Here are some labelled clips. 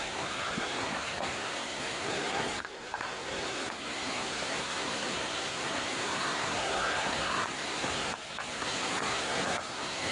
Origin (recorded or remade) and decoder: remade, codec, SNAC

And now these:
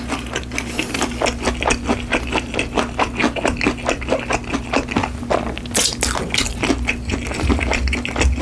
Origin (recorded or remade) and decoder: recorded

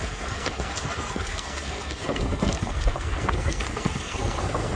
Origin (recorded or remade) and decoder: remade, codec, SNAC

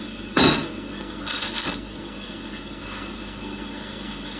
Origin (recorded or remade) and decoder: remade, codec, SNAC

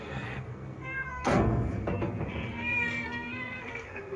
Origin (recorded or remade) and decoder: remade, codec, SNAC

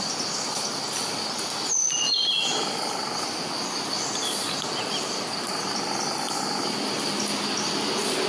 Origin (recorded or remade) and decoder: recorded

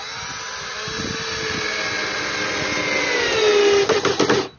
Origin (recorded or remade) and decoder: recorded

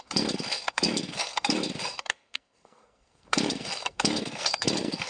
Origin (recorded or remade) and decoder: remade, codec, SNAC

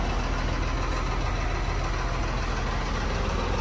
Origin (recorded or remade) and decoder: recorded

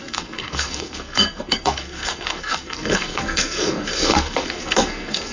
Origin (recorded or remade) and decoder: remade, codec, SNAC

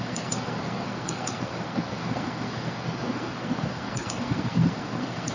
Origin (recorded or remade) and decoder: remade, codec, SNAC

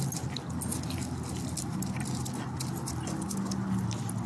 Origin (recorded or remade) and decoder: recorded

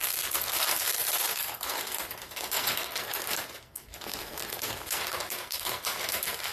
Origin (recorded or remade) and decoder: remade, codec, SNAC